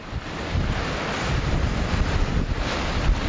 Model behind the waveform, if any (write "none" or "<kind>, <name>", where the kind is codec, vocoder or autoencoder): none